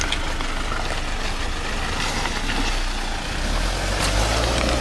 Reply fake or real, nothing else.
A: real